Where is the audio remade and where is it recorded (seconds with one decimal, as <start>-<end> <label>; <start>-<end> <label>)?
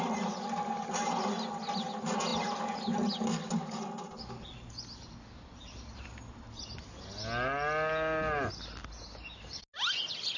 0.0-10.4 recorded